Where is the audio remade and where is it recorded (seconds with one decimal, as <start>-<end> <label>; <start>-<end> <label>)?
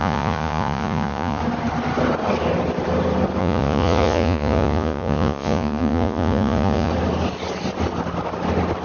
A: 0.0-1.4 remade; 1.4-3.4 recorded; 3.4-6.9 remade; 6.9-8.8 recorded